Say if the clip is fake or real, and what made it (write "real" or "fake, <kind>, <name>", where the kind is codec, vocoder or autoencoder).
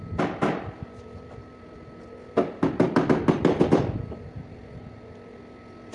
real